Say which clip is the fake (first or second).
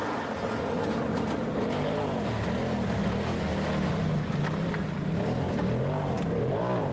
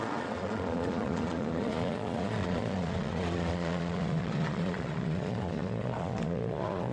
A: second